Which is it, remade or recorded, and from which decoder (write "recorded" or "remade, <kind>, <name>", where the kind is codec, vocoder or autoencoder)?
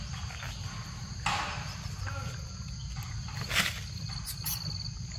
recorded